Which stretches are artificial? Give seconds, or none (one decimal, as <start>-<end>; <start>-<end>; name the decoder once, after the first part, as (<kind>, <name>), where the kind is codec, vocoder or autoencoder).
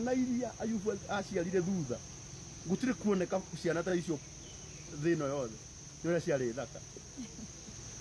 none